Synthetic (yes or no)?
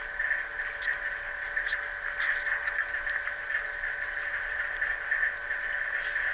no